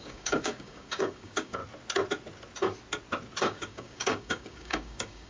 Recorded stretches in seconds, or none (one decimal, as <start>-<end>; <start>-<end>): 1.6-3.4